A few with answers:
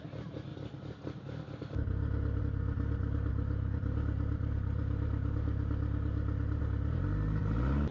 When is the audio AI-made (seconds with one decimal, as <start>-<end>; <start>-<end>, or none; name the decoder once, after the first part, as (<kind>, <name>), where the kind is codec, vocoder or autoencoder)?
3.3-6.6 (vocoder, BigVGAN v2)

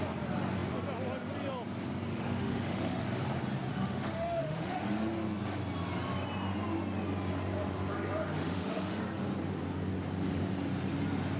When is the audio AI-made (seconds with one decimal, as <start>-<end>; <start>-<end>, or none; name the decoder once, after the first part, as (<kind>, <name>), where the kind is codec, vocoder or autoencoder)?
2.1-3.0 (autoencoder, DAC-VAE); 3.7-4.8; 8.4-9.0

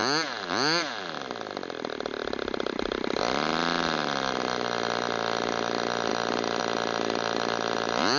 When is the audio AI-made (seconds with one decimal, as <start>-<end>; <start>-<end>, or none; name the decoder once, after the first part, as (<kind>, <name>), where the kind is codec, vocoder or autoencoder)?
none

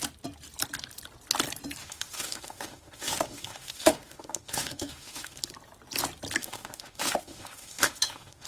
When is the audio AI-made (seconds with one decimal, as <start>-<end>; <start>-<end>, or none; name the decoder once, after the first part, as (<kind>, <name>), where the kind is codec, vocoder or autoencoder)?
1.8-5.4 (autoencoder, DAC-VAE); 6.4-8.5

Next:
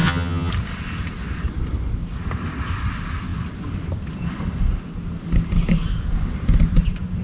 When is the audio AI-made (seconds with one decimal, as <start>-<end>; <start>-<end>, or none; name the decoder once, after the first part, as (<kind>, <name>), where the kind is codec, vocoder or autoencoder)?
0.0-0.5 (vocoder, HiFi-GAN)

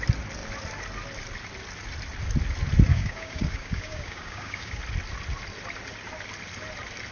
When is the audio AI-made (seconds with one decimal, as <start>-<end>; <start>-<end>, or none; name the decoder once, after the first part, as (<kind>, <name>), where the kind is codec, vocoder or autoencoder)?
2.9-4.8 (codec, DAC)

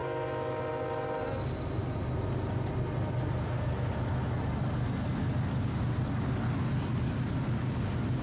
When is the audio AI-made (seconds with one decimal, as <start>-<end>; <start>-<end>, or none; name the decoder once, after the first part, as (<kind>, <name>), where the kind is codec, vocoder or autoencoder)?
none